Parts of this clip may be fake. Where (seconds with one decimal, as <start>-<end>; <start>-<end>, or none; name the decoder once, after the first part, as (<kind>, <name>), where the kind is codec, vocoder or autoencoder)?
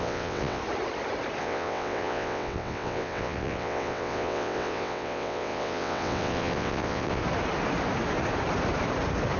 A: 0.0-0.6 (vocoder, WaveNeXt); 1.4-7.2